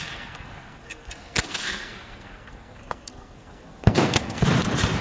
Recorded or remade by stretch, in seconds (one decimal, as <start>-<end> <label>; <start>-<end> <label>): 0.0-4.4 remade; 4.4-5.0 recorded